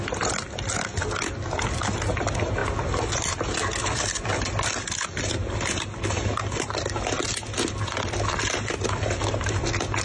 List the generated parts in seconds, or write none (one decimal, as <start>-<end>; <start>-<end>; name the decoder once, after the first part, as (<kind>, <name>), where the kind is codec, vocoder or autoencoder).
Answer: none

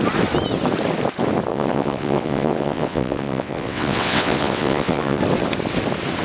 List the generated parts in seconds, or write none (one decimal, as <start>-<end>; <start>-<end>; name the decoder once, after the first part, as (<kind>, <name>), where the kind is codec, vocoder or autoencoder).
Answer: 1.5-5.2 (vocoder, WaveNeXt)

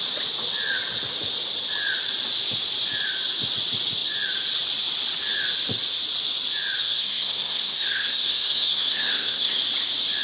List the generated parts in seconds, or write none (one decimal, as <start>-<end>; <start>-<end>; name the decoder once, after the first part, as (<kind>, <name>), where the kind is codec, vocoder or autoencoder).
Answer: 6.8-9.6 (codec, SNAC)

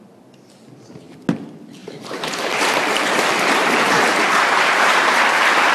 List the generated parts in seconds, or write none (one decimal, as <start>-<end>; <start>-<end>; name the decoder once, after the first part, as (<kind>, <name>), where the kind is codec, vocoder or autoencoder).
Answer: 1.8-5.2 (vocoder, BigVGAN v2)

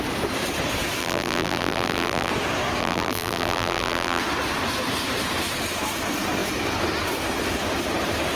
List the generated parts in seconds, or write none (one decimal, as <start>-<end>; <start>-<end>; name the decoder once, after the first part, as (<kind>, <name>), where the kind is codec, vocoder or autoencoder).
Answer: 1.0-2.3 (vocoder, BigVGAN v2); 2.8-4.2

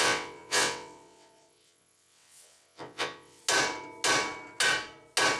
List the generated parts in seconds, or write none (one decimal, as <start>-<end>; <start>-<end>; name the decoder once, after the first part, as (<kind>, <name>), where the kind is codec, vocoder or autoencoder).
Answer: 0.0-3.4 (vocoder, WaveNeXt)

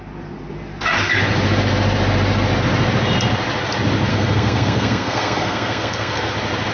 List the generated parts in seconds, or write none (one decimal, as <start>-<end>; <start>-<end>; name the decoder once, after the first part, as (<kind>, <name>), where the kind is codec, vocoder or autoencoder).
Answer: 4.1-6.3 (codec, SNAC)

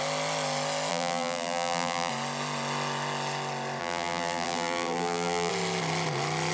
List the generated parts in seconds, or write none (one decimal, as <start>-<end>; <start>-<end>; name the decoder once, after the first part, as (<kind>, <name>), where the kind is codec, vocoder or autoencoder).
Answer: 0.9-2.1 (vocoder, BigVGAN v2); 3.8-5.5